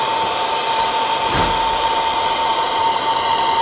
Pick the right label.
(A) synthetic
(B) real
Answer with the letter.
B